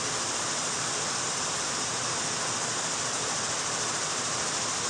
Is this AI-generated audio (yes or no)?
yes